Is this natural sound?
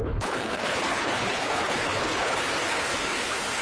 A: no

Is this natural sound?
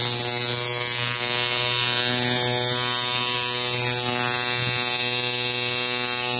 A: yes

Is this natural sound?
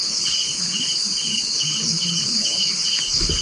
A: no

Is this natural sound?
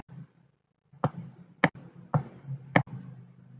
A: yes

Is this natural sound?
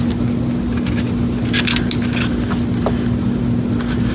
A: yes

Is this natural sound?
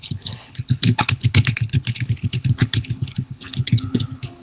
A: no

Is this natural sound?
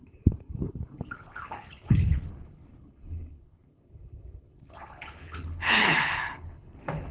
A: no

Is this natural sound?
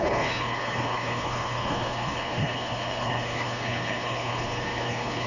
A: no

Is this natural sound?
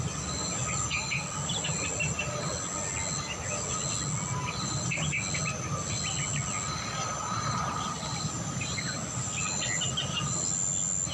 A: yes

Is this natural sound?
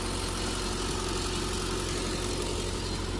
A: yes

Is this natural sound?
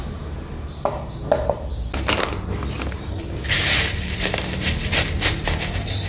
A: yes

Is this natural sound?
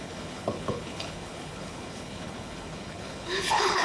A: no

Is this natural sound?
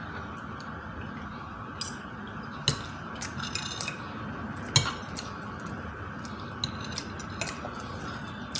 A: yes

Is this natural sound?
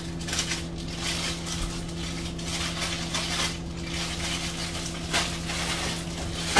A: yes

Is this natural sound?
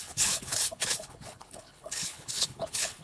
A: no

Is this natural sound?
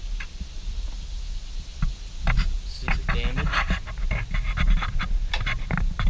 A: yes